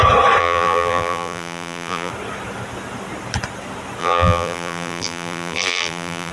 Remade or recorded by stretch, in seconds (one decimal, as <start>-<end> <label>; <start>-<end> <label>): 0.0-0.4 recorded; 0.4-2.1 remade; 2.1-4.0 recorded; 4.0-6.3 remade